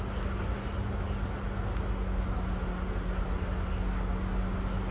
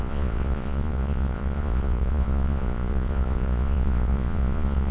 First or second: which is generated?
second